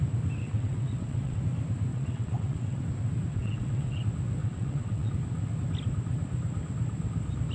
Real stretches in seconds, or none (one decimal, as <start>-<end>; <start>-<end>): 0.0-0.4; 1.4-1.9; 2.8-3.3; 4.0-4.4; 5.1-7.5